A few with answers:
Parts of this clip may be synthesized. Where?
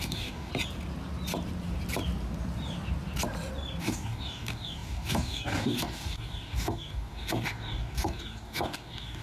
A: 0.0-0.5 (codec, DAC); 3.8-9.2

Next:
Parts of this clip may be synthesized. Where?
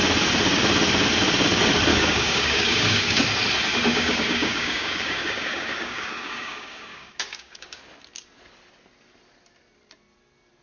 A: 1.9-3.2 (codec, DAC); 3.9-7.8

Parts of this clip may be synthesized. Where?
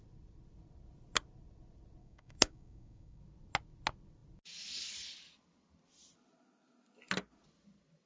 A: 2.0-3.2 (codec, DAC)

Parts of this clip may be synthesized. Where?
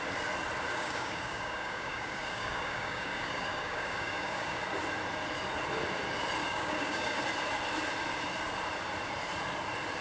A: 0.7-4.6 (codec, DAC); 6.4-7.2